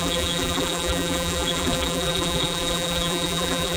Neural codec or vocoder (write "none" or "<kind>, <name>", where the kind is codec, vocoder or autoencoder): vocoder, BigVGAN v2